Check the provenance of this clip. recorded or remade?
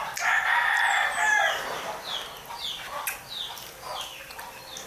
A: recorded